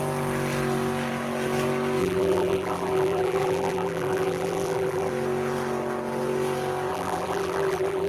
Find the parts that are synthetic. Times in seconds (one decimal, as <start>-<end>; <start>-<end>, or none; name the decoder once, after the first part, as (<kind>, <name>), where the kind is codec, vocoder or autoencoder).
2.0-5.1 (vocoder, BigVGAN v2); 6.9-8.1